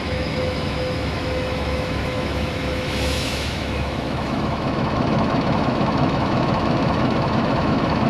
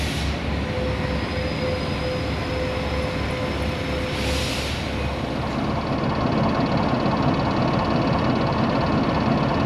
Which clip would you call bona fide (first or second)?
second